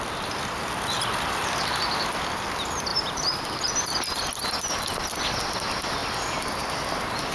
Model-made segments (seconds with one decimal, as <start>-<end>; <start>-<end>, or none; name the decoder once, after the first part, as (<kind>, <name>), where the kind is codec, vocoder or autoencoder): 2.9-3.7 (vocoder, BigVGAN v2)